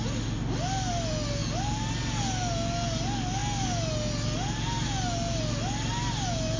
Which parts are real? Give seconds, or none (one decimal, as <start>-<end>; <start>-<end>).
0.0-6.6

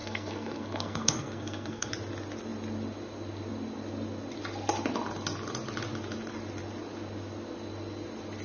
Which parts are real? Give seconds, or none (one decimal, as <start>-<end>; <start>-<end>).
1.9-8.4

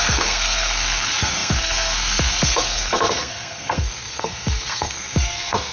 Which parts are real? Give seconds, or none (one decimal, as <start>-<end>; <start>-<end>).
none

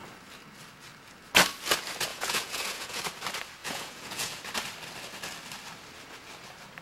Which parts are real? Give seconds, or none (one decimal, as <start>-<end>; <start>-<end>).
0.0-2.1; 3.0-3.6; 4.4-6.8

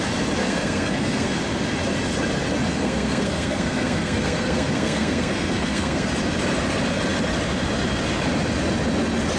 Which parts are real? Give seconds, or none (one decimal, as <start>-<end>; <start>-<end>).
0.0-0.4; 1.4-2.7; 6.1-9.4

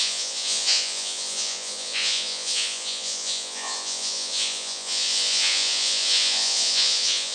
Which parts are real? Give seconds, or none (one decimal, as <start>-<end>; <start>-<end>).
none

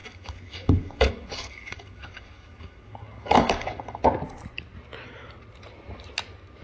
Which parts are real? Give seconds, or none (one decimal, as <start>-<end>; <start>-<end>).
4.0-6.6